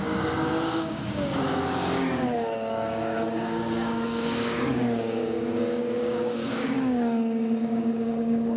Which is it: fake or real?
fake